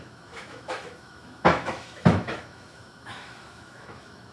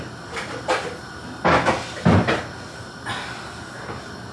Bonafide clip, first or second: second